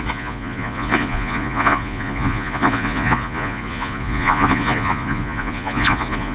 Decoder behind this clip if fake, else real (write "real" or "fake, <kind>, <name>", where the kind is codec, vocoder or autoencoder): fake, vocoder, Vocos